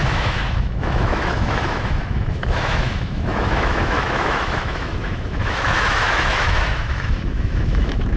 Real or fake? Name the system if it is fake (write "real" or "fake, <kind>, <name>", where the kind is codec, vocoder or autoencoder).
fake, autoencoder, DAC-VAE